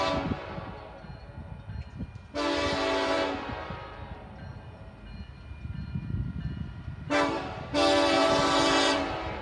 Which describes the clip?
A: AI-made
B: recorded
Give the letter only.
B